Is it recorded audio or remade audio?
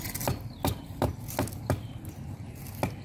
recorded